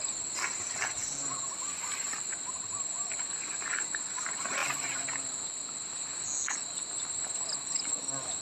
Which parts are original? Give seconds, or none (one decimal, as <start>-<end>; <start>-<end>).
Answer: 0.0-8.4